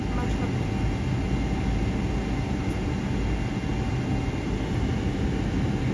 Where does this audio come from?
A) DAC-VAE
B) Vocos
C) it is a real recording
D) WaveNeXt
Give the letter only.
C